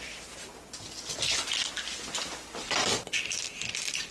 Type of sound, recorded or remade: recorded